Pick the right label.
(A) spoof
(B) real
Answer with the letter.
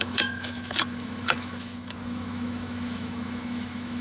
A